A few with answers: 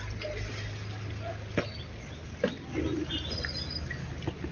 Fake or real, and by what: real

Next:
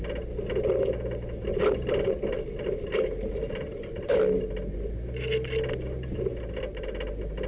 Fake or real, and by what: real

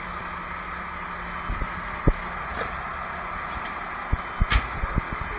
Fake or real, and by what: real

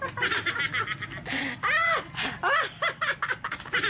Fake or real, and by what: real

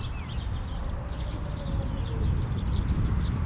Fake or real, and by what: real